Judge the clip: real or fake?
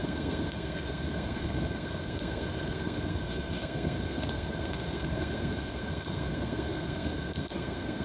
fake